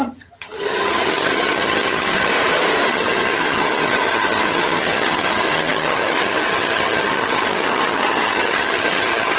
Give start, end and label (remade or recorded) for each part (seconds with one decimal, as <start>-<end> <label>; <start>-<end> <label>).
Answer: 0.0-2.3 remade; 2.3-2.9 recorded; 2.9-9.4 remade